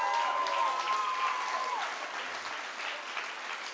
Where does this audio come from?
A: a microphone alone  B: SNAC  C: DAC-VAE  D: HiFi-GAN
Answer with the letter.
A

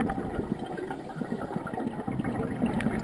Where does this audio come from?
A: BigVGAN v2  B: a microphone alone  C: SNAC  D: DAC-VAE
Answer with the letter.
A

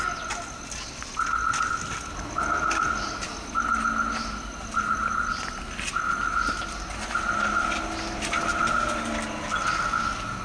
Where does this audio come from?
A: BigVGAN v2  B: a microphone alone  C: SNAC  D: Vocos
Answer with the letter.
B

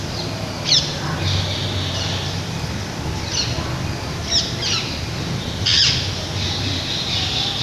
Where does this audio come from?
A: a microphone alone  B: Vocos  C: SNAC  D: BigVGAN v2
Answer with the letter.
A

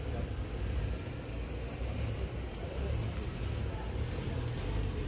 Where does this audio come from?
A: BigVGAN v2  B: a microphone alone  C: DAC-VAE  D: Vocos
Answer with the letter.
B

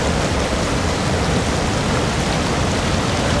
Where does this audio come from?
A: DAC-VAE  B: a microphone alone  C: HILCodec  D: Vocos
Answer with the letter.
B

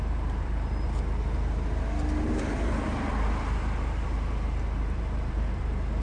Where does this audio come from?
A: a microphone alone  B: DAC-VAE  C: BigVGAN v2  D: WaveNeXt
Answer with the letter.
C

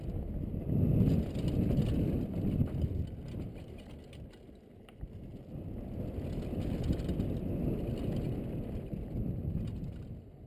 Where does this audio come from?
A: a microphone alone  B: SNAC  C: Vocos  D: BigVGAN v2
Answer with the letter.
A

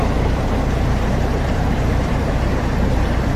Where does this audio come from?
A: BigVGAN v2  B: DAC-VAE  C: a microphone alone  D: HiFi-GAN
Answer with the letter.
A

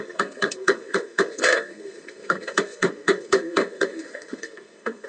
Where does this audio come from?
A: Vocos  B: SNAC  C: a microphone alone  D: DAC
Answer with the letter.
B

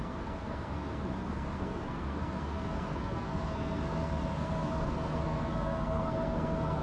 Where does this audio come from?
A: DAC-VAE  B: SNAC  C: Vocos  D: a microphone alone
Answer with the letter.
B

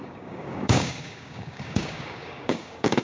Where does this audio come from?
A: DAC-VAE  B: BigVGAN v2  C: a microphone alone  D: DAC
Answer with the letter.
D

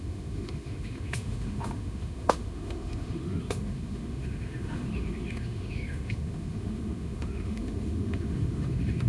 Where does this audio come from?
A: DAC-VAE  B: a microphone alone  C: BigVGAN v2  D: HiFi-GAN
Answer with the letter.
A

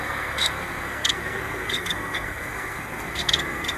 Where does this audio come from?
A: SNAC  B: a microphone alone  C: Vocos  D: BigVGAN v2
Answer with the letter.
A